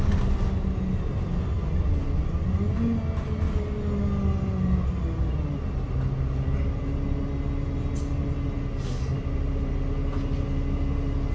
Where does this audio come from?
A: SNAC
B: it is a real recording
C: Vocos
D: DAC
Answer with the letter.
B